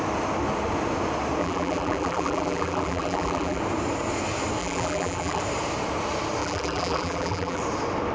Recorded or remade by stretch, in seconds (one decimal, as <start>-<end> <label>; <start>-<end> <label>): 0.0-1.4 recorded; 1.4-3.6 remade; 3.6-4.6 recorded; 4.6-5.4 remade; 5.4-6.4 recorded; 6.4-7.6 remade; 7.6-8.1 recorded